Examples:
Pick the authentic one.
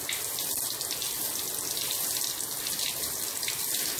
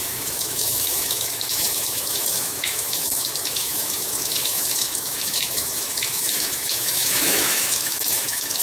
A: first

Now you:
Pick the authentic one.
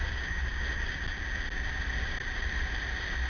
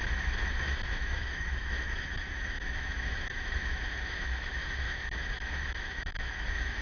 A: first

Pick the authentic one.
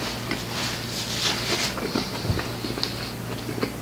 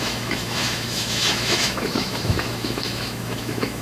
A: first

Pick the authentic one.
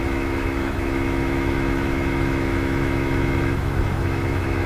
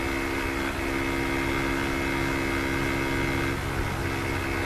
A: second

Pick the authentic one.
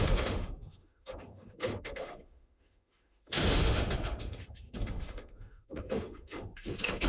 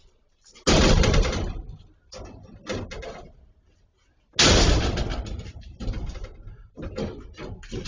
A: second